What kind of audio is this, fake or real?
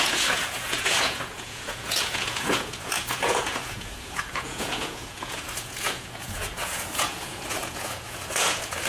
fake